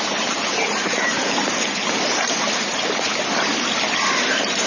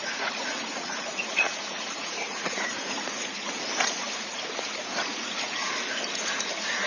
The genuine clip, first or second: first